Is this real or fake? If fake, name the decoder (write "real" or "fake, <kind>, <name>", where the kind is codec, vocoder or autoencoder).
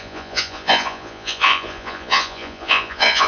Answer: fake, vocoder, Vocos